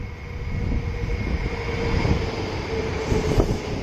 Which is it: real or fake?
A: real